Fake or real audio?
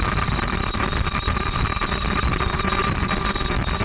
real